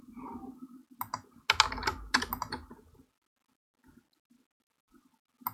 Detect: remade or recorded recorded